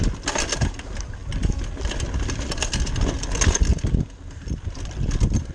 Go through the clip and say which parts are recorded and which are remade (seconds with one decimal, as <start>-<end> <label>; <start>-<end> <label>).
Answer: 0.0-5.5 recorded